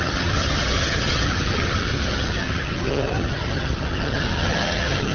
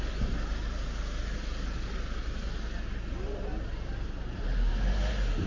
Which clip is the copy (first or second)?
first